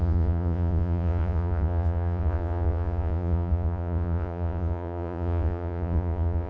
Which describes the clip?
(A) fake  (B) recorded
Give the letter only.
A